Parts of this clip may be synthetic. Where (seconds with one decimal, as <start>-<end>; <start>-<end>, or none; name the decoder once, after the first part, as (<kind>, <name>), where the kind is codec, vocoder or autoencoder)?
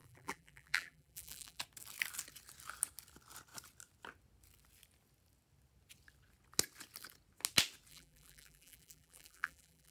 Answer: 0.0-1.6 (vocoder, BigVGAN v2); 7.9-9.9